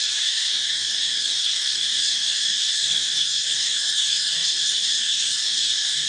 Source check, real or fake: fake